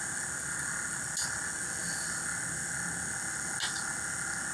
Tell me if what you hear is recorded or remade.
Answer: recorded